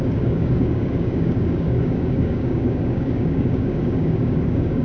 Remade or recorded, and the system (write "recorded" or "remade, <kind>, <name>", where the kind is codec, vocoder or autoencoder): remade, codec, DAC